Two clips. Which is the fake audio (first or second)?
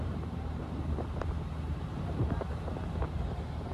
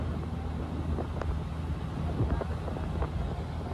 first